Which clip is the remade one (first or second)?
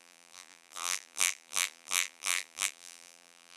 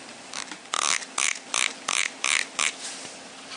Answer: first